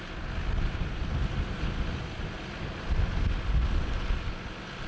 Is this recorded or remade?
recorded